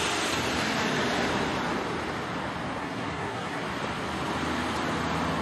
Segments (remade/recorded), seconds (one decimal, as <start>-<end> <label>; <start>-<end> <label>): 0.0-2.8 recorded; 2.8-3.6 remade; 3.6-5.4 recorded